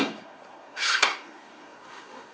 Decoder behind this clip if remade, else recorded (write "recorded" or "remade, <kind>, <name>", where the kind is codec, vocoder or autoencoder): remade, codec, SNAC